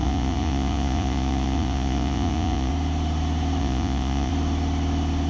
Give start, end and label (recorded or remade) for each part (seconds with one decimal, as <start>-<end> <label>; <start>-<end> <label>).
0.0-2.7 remade; 2.7-3.6 recorded; 3.6-4.3 remade; 4.3-5.3 recorded